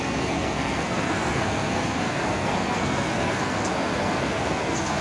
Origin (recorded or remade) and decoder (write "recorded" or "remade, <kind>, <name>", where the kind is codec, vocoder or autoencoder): remade, codec, SNAC